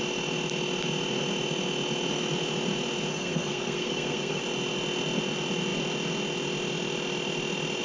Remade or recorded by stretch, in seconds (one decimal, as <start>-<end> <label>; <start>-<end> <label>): 0.0-3.1 recorded; 3.1-4.4 remade; 4.4-7.8 recorded